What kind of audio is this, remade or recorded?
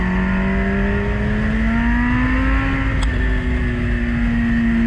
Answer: recorded